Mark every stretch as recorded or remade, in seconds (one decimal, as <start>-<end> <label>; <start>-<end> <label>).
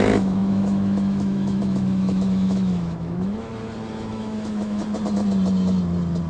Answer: 0.0-3.5 remade; 3.5-4.1 recorded; 4.1-4.8 remade; 4.8-6.3 recorded